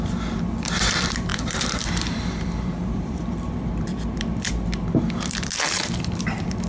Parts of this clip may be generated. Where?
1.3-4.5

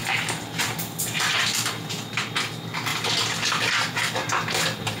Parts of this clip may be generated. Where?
0.0-2.2; 2.9-3.7

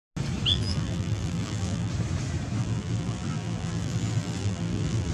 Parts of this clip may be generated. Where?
0.5-1.9; 2.6-5.1